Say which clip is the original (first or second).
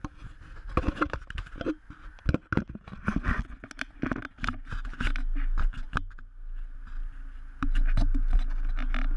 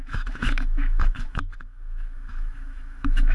first